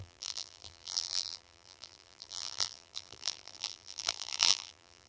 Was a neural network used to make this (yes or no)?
yes